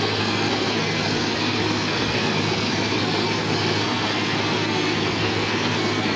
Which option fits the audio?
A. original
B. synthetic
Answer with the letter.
B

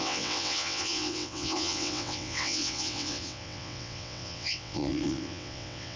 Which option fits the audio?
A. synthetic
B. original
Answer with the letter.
A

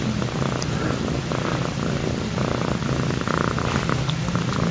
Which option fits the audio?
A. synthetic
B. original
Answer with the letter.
B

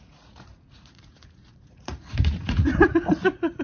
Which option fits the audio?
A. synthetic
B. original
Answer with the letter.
A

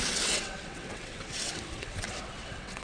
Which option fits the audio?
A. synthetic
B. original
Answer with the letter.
A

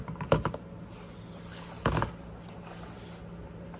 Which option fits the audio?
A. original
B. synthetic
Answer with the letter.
A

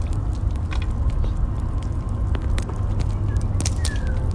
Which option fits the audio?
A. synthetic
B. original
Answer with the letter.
B